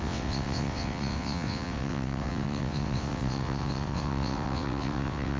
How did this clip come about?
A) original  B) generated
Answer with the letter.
B